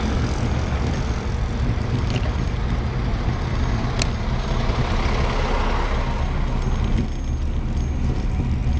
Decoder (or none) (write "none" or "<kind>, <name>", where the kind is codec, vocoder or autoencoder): none